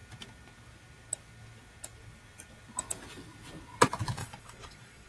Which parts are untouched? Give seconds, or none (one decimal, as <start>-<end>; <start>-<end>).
0.0-4.2